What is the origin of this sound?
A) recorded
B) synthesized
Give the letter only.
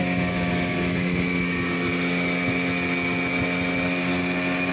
A